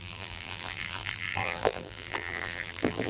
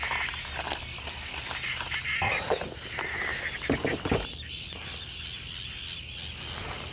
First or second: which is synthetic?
first